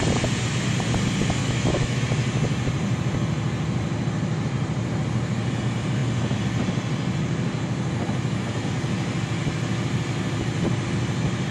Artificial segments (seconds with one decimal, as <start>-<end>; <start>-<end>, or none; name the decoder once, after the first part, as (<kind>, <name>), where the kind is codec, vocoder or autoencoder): 1.4-2.0 (autoencoder, DAC-VAE)